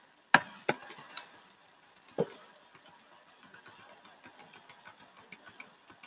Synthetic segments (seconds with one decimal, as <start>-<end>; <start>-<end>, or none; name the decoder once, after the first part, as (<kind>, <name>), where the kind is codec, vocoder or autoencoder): 0.8-2.5 (vocoder, BigVGAN v2)